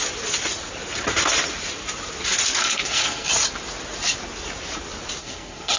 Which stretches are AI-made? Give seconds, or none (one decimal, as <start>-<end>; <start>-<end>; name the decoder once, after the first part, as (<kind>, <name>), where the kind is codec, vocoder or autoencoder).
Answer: 2.6-3.3 (codec, SNAC); 5.2-5.8